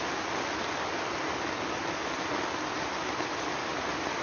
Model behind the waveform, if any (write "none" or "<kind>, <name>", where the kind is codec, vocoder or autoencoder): none